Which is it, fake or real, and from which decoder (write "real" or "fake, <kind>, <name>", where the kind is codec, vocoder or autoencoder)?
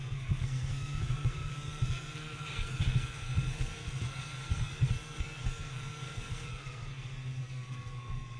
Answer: fake, codec, SNAC